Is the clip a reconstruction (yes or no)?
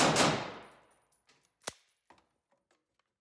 no